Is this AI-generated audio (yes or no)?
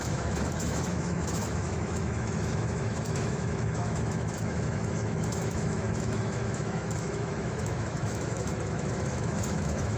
yes